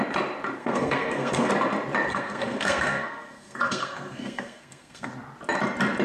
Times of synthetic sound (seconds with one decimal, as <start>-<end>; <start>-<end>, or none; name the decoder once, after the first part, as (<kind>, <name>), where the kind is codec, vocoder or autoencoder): 0.6-1.5 (codec, SNAC); 2.1-5.1